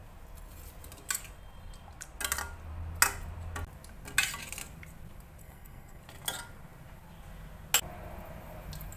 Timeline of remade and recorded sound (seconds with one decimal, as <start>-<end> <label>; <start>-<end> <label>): 0.0-5.4 recorded; 5.4-6.0 remade; 6.0-9.0 recorded